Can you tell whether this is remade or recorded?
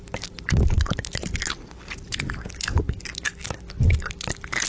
recorded